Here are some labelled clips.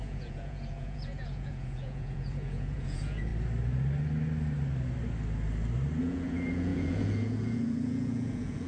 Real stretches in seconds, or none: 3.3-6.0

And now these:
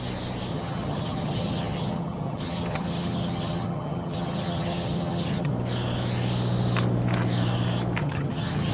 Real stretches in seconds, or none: 0.0-0.5; 5.5-8.0

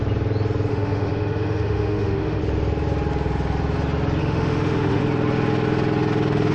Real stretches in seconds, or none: 0.0-0.7; 2.4-4.2; 5.0-6.5

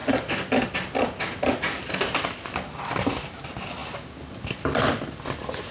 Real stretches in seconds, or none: 0.0-5.7